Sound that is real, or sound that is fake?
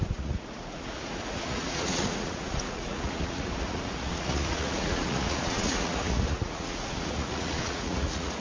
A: fake